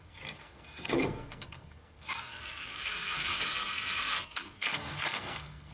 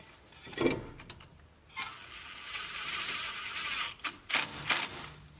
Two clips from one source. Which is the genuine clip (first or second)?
second